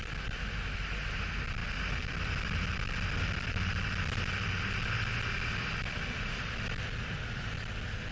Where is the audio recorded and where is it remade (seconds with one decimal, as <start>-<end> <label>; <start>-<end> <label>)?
0.0-8.1 recorded